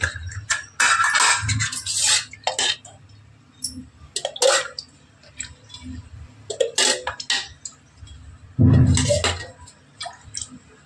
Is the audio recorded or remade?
recorded